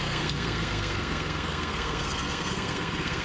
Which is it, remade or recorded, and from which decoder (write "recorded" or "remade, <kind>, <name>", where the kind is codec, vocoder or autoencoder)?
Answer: remade, codec, SNAC